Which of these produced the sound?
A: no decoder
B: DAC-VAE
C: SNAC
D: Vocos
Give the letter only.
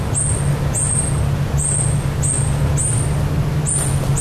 A